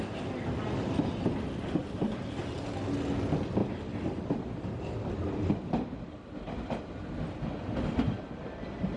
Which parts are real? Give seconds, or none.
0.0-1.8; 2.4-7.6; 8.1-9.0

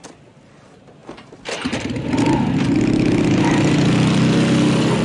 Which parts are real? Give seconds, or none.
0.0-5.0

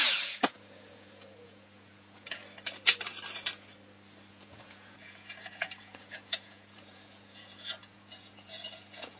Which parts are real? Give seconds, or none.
2.4-4.3

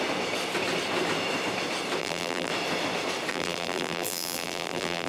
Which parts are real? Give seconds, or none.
0.0-2.0; 2.5-3.3

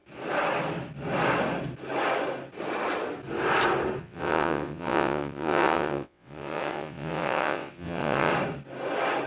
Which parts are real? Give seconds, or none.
0.0-4.0; 8.3-9.3

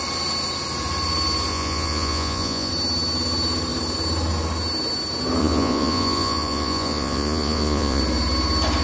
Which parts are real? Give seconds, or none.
0.0-1.5; 2.7-5.4; 8.0-8.8

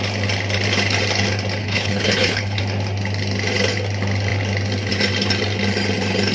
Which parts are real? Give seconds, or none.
0.0-1.6; 2.6-6.3

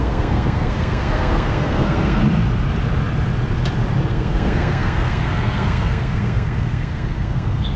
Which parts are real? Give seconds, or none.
2.2-4.1